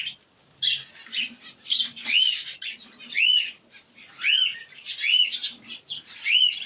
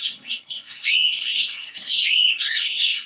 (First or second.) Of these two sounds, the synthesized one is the second